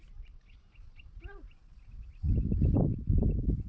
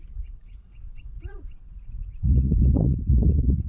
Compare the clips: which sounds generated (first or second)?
second